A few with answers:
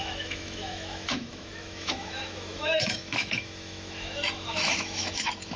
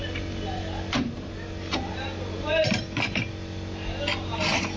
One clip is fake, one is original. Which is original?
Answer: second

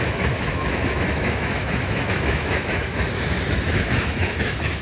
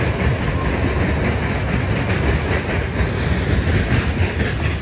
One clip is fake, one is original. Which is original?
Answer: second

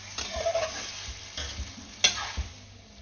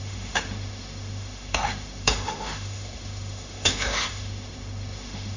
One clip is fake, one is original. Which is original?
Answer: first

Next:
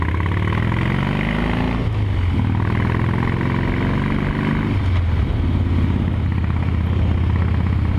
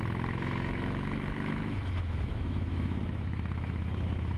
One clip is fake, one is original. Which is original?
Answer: first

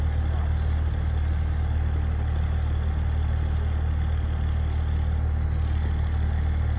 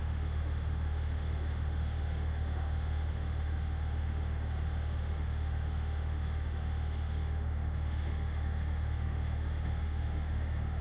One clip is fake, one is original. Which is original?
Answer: first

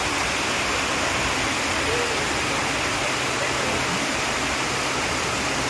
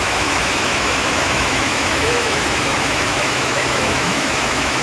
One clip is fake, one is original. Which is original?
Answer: first